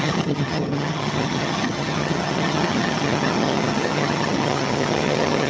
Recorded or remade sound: remade